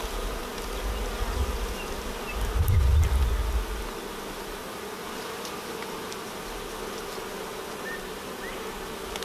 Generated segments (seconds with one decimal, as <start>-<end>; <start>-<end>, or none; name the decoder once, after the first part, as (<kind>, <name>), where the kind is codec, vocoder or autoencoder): none